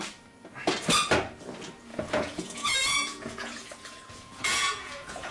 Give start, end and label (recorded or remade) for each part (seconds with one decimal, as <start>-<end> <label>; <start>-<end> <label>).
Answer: 0.0-1.9 recorded; 1.9-5.3 remade